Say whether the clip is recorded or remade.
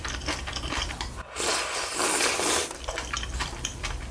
recorded